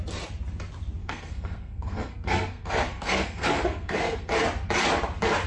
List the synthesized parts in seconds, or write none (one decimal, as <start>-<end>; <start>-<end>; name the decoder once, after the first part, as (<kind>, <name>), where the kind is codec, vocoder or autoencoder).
1.0-4.3 (codec, SNAC)